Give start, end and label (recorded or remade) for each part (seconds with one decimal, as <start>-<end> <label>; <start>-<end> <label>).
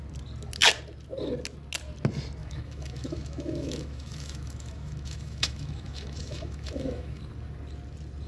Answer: 0.0-2.4 recorded; 2.4-7.2 remade; 7.2-8.3 recorded